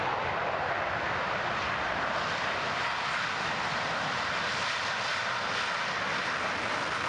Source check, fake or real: fake